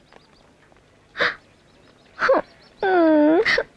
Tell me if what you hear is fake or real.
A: real